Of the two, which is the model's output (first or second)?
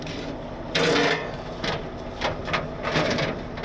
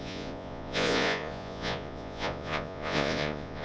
second